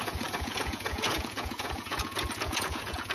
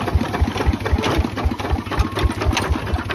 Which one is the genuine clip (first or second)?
second